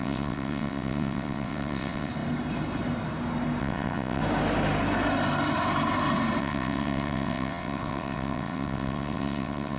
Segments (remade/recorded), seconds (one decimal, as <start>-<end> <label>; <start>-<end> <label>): 0.0-2.1 remade; 2.1-3.6 recorded; 3.6-4.2 remade; 4.2-6.4 recorded; 6.4-9.8 remade

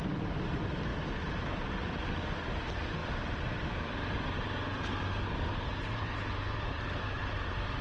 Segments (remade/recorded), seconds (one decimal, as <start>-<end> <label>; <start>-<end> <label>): 0.0-0.9 recorded; 0.9-1.7 remade; 1.7-3.0 recorded; 3.0-7.8 remade